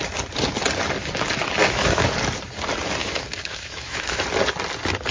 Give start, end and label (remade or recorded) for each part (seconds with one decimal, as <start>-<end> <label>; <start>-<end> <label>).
0.0-1.6 recorded; 1.6-2.1 remade; 2.1-3.0 recorded; 3.0-4.2 remade; 4.2-5.1 recorded